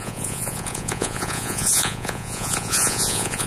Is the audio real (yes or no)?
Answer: no